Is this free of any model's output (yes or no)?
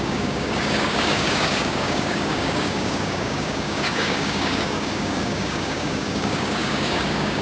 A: no